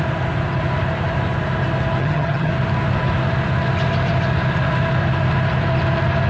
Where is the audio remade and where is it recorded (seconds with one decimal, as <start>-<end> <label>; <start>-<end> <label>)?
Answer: 0.0-2.0 recorded; 2.0-2.5 remade; 2.5-6.3 recorded